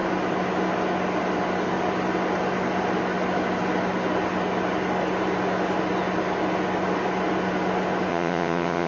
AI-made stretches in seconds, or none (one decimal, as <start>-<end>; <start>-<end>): 8.1-8.9